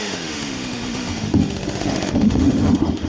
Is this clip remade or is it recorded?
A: remade